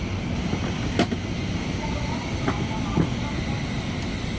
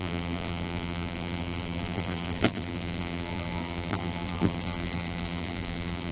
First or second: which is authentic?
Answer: first